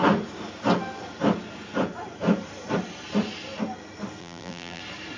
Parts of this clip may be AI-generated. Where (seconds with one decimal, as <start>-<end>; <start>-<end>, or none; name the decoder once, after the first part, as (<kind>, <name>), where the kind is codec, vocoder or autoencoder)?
4.2-4.8 (vocoder, BigVGAN v2)